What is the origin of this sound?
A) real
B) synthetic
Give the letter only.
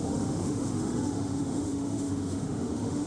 B